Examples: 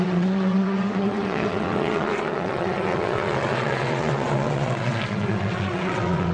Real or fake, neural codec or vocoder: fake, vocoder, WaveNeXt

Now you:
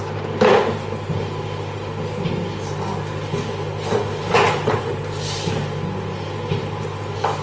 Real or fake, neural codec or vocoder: real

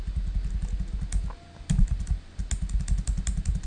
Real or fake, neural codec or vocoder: real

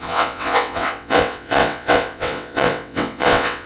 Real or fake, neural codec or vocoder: fake, vocoder, WaveNeXt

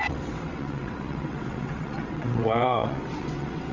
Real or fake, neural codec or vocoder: fake, vocoder, WaveNeXt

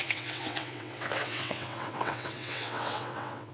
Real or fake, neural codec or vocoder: fake, vocoder, WaveNeXt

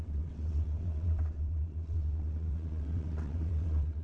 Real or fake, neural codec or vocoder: fake, vocoder, WaveNeXt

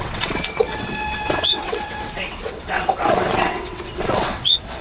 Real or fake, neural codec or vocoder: fake, vocoder, WaveNeXt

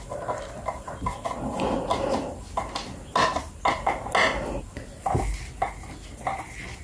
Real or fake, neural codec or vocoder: real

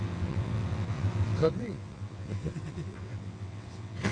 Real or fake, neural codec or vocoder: fake, vocoder, WaveNeXt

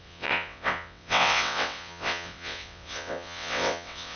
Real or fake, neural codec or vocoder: fake, vocoder, WaveNeXt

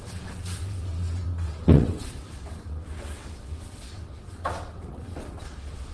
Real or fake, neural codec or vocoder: fake, vocoder, WaveNeXt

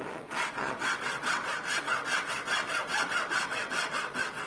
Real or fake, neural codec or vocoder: fake, vocoder, WaveNeXt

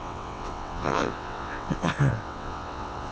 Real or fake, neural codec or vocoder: fake, vocoder, WaveNeXt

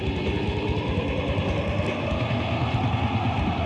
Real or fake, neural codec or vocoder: real